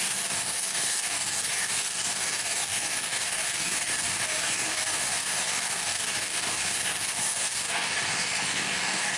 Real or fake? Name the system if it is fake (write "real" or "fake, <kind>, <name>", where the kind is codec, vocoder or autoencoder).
fake, codec, DAC